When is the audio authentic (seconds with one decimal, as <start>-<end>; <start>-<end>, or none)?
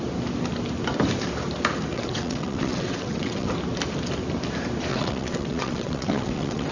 0.0-1.9; 3.5-4.9